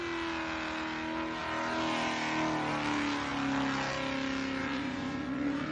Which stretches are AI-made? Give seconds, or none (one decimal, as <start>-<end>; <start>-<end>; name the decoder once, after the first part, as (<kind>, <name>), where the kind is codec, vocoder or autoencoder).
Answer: 4.6-5.7 (vocoder, Vocos)